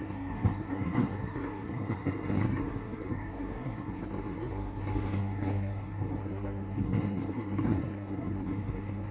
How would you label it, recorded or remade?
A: remade